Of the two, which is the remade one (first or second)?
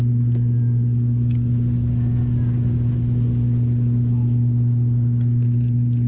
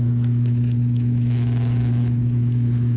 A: second